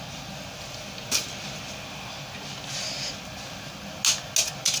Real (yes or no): yes